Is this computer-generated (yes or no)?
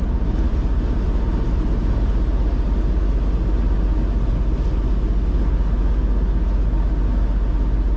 no